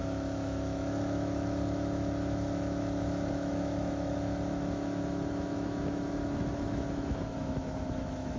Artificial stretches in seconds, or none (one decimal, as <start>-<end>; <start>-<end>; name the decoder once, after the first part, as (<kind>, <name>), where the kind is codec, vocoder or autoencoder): 0.0-8.4 (autoencoder, DAC-VAE)